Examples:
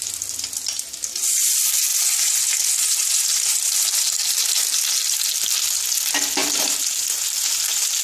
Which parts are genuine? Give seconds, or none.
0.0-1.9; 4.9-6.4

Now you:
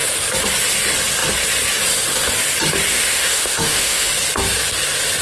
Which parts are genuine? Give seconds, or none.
0.0-2.9; 4.1-5.2